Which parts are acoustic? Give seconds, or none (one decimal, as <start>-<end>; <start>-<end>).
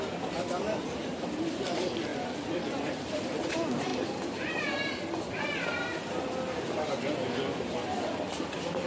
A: 3.9-4.5; 6.0-7.6